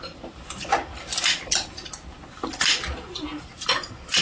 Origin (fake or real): real